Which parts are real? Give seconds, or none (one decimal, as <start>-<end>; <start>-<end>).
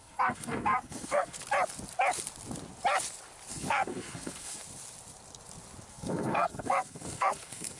1.4-3.5; 4.6-5.9